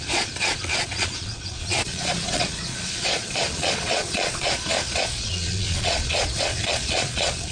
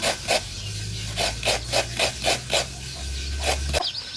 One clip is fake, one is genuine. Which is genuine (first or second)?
second